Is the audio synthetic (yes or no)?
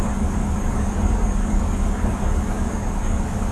yes